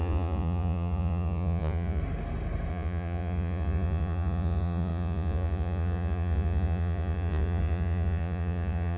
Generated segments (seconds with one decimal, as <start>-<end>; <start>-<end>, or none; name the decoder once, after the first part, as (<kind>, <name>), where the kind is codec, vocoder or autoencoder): 0.0-2.0 (vocoder, Vocos); 2.7-9.0